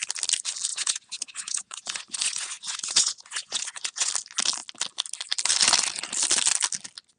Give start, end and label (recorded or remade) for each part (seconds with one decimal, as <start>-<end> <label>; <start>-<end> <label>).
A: 0.0-0.7 recorded; 0.7-4.1 remade; 4.1-7.2 recorded